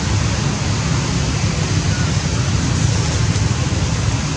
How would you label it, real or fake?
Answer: real